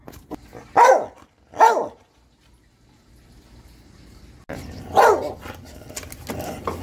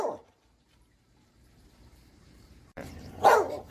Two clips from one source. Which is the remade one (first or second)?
second